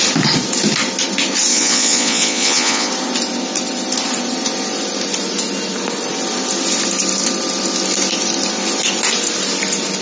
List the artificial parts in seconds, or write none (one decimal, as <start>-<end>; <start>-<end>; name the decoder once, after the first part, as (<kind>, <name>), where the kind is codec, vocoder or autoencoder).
1.5-2.9 (vocoder, Vocos)